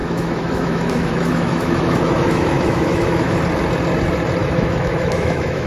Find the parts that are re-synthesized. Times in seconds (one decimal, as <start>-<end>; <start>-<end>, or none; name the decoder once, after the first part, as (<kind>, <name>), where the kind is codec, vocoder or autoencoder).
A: 0.0-3.4 (autoencoder, DAC-VAE); 4.4-5.7